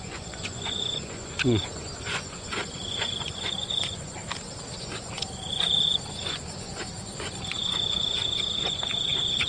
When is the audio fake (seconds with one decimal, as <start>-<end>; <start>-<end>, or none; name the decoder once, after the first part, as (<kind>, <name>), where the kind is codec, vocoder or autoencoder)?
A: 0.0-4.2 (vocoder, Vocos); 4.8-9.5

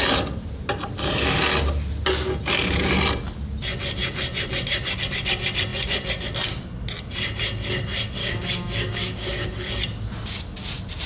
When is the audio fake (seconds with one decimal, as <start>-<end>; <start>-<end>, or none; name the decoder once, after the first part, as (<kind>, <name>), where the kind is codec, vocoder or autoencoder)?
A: 8.2-9.7 (codec, DAC)

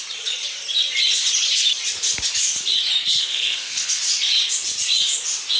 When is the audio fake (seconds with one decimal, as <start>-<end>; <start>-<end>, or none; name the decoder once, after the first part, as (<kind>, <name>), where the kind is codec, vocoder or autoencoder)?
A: 3.0-4.0 (codec, SNAC)

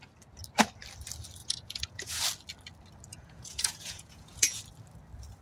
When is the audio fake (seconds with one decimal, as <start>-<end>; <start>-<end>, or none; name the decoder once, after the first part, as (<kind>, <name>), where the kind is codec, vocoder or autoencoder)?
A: 1.4-2.2 (vocoder, Vocos); 3.1-4.6

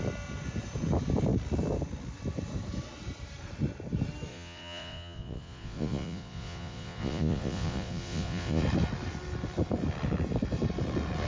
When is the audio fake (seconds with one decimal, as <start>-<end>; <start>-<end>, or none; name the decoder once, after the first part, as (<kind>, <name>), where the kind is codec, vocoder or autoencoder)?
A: 4.3-8.6 (vocoder, Vocos)